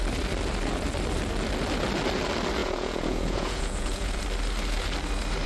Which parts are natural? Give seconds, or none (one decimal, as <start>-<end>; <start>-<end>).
0.0-2.6; 4.2-5.5